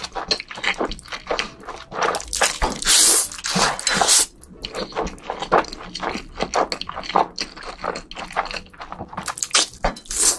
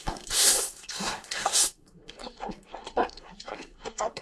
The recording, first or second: first